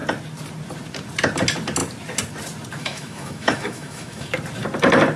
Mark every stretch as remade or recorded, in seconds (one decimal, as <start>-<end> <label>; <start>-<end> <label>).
0.0-2.8 recorded; 2.8-4.3 remade; 4.3-5.2 recorded